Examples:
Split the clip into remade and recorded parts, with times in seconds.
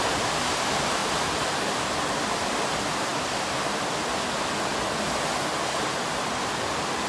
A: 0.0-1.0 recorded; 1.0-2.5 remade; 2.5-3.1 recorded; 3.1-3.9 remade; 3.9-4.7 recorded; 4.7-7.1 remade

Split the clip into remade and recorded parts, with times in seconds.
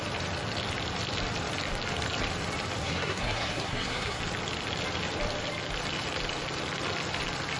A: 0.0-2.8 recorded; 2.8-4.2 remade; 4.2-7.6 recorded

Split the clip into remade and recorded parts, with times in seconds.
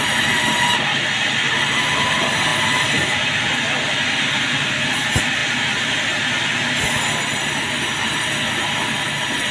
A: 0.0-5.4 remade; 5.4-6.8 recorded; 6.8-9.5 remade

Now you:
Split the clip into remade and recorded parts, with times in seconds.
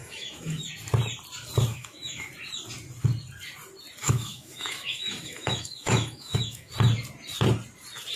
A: 0.0-0.6 remade; 0.6-1.7 recorded; 1.7-2.3 remade; 2.3-4.0 recorded; 4.0-6.7 remade; 6.7-8.2 recorded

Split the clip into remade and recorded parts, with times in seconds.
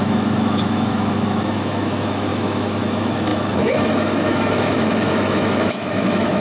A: 0.0-6.4 remade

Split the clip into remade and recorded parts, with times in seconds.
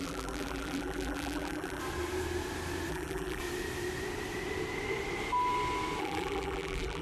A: 0.0-1.8 remade; 1.8-2.9 recorded; 2.9-3.4 remade; 3.4-6.0 recorded; 6.0-7.0 remade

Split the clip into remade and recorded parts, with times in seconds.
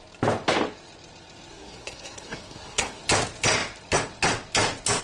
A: 0.0-1.5 recorded; 1.5-3.0 remade; 3.0-5.0 recorded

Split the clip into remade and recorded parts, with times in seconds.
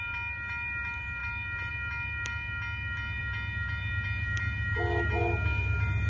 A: 0.0-6.1 recorded